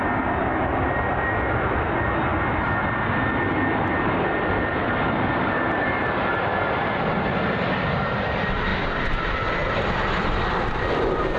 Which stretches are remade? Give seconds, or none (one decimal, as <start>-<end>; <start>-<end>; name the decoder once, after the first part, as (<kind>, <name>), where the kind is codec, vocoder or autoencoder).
none